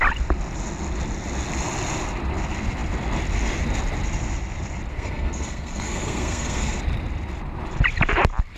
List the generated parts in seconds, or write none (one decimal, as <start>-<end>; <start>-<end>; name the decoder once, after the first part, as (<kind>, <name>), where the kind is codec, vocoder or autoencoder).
4.9-6.8 (codec, SNAC)